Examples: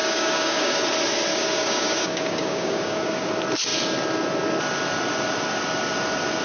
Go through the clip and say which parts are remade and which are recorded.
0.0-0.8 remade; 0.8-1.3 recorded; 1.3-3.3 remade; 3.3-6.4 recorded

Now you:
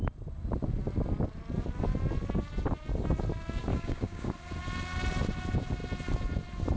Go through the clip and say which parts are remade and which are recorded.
0.0-3.7 recorded; 3.7-4.3 remade; 4.3-6.8 recorded

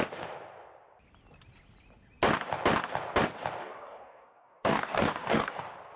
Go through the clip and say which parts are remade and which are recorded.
0.0-3.6 recorded; 3.6-5.6 remade; 5.6-6.0 recorded

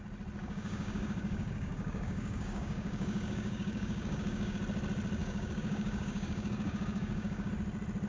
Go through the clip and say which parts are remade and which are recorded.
0.0-0.4 recorded; 0.4-4.6 remade; 4.6-5.2 recorded; 5.2-7.5 remade; 7.5-8.1 recorded

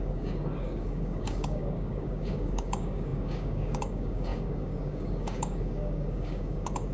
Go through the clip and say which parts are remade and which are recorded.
0.0-6.9 remade

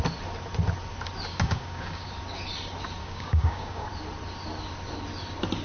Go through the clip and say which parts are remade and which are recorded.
0.0-1.3 recorded; 1.3-2.1 remade; 2.1-3.0 recorded; 3.0-3.9 remade; 3.9-5.6 recorded

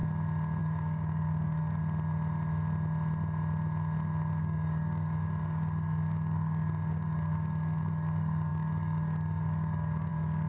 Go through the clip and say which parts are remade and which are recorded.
0.0-0.6 recorded; 0.6-1.8 remade; 1.8-4.4 recorded; 4.4-10.5 remade